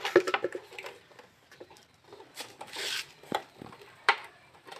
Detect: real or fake fake